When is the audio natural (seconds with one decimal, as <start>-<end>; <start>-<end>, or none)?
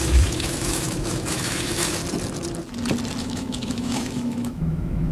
2.0-3.2